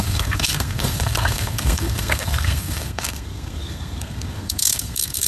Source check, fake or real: fake